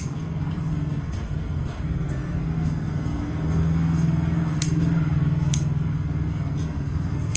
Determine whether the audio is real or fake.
fake